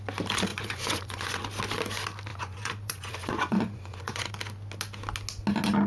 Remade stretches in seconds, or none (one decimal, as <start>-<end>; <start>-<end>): 0.5-1.4; 2.3-4.3

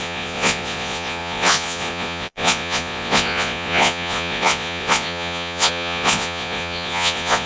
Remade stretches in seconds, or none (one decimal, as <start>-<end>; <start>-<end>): 0.0-7.5

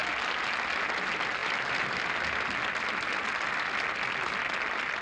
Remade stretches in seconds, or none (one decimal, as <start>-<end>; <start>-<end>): none

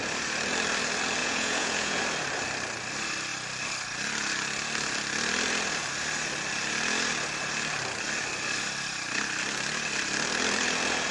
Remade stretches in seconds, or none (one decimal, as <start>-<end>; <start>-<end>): 1.2-2.0

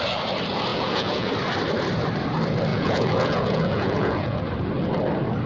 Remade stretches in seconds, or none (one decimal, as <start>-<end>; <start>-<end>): 0.7-1.3; 2.7-4.4